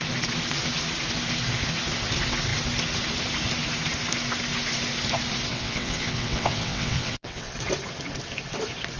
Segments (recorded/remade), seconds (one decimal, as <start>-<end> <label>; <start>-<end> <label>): 0.0-5.5 recorded; 5.5-7.5 remade; 7.5-9.0 recorded